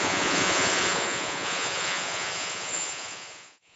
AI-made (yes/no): yes